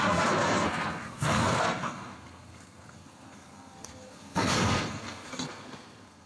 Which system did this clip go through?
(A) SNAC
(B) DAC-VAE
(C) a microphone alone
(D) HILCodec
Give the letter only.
A